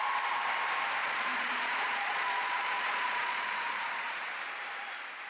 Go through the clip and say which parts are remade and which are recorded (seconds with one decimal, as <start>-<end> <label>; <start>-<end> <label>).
0.0-1.0 recorded; 1.0-4.2 remade; 4.2-5.3 recorded